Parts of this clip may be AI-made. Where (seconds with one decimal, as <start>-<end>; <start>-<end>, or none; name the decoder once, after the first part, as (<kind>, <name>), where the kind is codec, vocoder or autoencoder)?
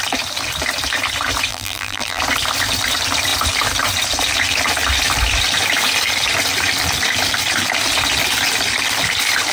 1.5-2.2 (vocoder, BigVGAN v2)